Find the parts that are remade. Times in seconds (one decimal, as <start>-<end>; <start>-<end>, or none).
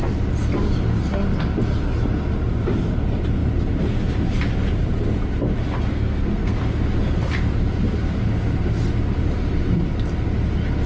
5.9-6.6